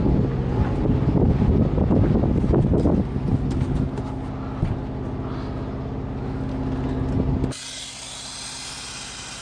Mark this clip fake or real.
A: real